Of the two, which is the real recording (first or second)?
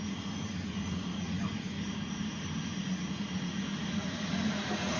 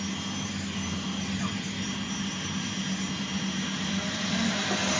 second